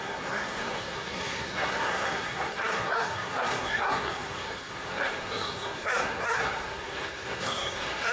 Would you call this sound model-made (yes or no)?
yes